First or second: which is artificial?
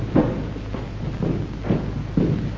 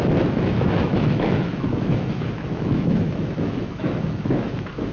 second